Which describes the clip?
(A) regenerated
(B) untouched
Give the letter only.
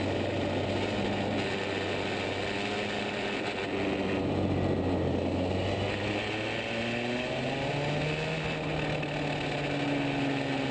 B